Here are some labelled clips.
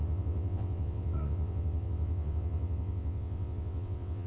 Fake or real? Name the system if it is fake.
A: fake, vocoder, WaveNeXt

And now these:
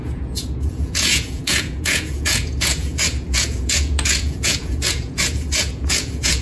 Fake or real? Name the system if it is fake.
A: fake, vocoder, Vocos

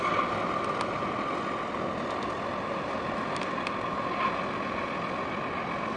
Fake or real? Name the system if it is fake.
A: real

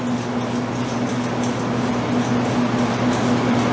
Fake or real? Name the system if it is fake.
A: real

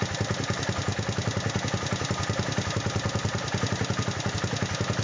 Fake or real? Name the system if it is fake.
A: real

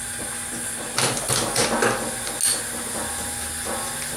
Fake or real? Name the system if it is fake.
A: real